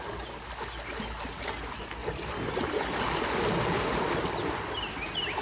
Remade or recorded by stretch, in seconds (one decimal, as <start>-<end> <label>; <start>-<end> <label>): 0.0-5.4 recorded